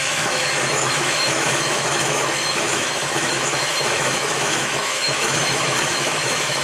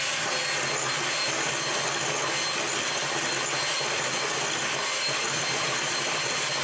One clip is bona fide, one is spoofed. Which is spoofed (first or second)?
first